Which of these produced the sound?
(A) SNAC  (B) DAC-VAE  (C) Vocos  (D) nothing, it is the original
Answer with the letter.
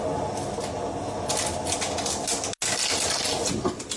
D